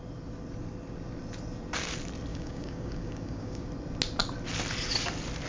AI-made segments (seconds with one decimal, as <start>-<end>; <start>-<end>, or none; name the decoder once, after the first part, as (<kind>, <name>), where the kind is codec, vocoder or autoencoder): 2.3-3.7 (codec, DAC)